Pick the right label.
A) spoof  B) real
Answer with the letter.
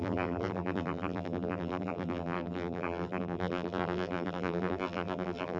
A